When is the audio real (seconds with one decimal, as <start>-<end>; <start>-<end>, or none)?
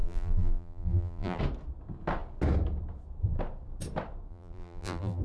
1.4-4.3